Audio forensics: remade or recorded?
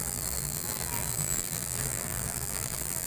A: remade